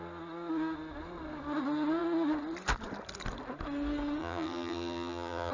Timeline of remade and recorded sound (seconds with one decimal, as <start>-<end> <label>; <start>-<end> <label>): 0.0-4.2 recorded; 4.2-5.5 remade